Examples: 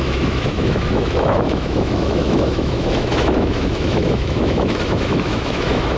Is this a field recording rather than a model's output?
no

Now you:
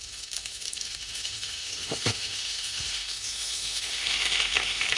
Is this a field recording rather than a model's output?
no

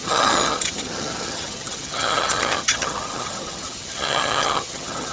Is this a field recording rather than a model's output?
no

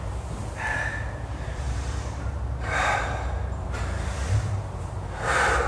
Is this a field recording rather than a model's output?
no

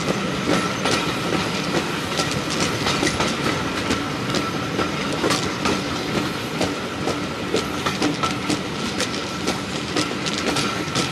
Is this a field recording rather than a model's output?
yes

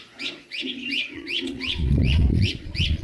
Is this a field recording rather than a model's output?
no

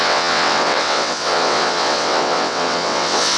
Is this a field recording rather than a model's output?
no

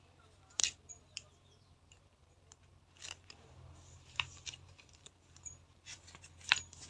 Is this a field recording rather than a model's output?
no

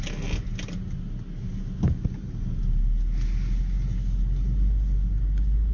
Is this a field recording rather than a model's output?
yes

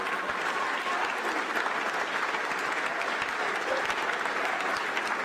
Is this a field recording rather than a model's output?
yes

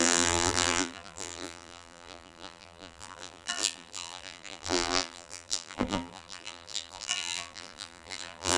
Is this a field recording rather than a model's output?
no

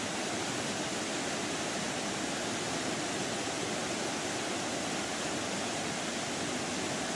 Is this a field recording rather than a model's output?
yes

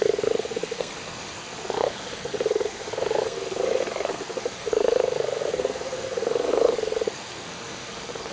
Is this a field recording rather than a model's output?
no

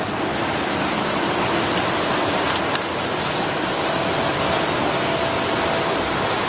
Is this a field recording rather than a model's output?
yes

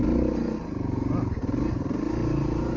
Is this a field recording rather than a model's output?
yes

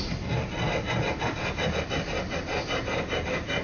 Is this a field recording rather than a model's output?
yes